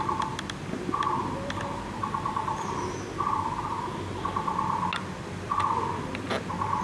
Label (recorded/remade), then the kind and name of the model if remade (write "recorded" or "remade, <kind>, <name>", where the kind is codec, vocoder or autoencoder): recorded